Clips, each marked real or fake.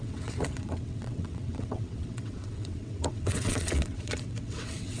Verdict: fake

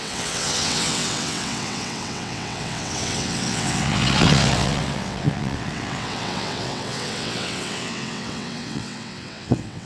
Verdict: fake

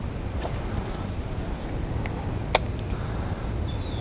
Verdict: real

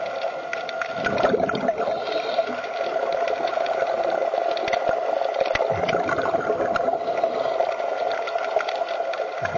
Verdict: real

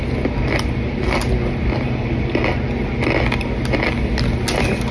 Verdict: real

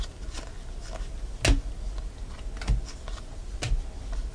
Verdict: real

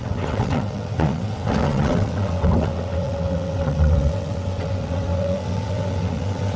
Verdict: fake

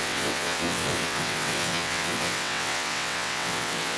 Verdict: fake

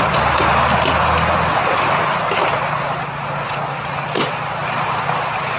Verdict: real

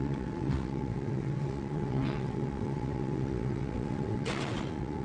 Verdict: fake